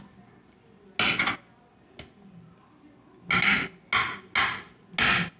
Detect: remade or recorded recorded